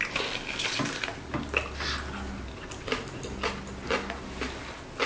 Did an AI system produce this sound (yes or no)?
no